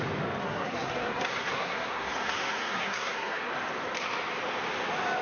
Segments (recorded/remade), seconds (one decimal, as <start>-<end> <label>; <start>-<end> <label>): 0.0-0.4 recorded; 0.4-3.5 remade; 3.5-5.2 recorded